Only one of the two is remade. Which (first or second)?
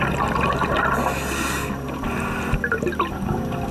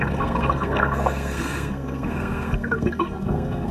second